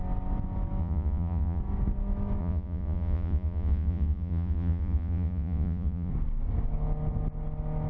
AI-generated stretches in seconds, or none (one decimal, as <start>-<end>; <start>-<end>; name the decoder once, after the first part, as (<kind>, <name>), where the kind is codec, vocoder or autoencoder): 0.8-1.6 (vocoder, Vocos); 2.4-6.1